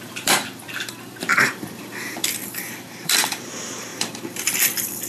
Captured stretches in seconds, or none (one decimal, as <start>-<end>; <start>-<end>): none